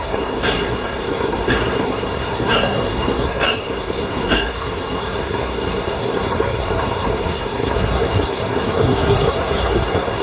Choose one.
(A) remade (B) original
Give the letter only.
A